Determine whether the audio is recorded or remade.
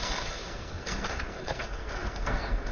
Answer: remade